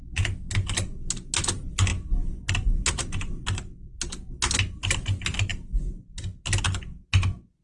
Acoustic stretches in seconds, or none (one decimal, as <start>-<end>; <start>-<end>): 0.0-7.6